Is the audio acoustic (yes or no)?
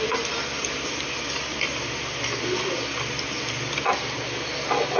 yes